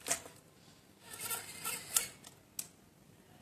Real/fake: real